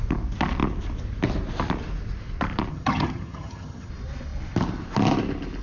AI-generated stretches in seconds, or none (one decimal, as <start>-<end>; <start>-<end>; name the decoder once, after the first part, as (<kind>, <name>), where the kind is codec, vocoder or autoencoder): 2.7-3.9 (vocoder, HiFi-GAN)